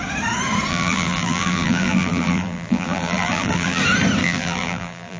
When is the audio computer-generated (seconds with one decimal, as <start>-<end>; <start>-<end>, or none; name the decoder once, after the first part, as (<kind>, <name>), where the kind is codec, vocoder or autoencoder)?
0.7-3.8 (vocoder, BigVGAN v2); 4.2-5.2